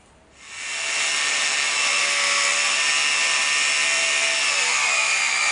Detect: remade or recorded recorded